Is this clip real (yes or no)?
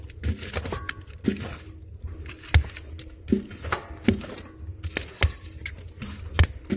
yes